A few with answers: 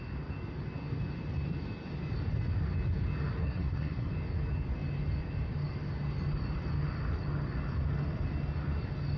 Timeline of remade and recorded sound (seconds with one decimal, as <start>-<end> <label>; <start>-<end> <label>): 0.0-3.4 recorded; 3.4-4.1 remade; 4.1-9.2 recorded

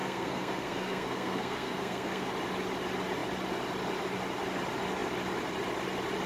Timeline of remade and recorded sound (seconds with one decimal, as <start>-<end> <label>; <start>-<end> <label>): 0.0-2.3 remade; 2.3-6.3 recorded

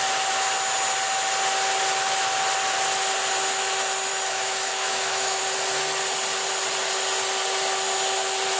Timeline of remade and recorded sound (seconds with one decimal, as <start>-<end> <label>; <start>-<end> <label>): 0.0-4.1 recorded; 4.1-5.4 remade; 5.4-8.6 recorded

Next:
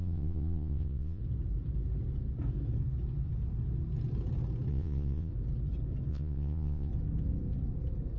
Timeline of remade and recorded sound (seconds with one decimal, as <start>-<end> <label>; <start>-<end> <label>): 0.0-1.2 remade; 1.2-4.7 recorded; 4.7-5.3 remade; 5.3-6.1 recorded; 6.1-6.9 remade; 6.9-8.2 recorded

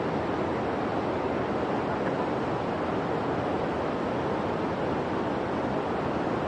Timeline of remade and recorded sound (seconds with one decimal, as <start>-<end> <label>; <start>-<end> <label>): 0.0-6.5 recorded

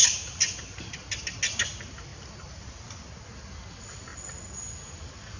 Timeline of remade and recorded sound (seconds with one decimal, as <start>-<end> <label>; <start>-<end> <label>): 0.0-5.4 recorded

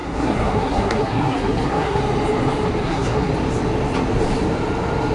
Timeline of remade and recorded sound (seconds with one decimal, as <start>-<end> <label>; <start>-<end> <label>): 0.0-2.0 remade; 2.0-2.8 recorded; 2.8-3.3 remade; 3.3-5.1 recorded

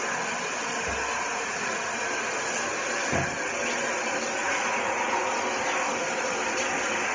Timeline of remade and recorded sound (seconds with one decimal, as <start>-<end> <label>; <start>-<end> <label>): 0.0-1.3 recorded; 1.3-1.8 remade; 1.8-4.4 recorded; 4.4-5.3 remade; 5.3-7.1 recorded